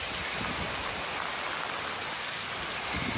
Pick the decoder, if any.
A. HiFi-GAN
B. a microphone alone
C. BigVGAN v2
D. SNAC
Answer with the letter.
B